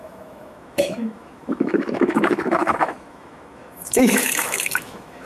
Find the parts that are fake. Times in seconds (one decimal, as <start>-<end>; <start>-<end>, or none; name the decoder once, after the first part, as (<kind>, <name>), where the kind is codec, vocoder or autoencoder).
0.0-5.3 (autoencoder, DAC-VAE)